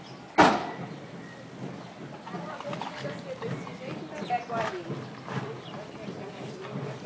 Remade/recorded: recorded